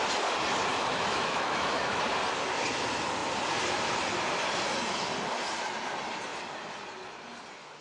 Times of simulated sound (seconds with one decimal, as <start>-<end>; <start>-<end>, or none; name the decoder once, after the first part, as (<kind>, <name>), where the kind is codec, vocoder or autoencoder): 0.7-2.0 (autoencoder, DAC-VAE)